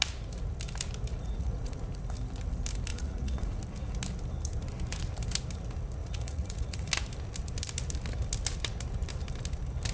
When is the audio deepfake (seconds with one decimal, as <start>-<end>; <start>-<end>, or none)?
1.1-1.9; 2.9-3.6; 6.0-6.9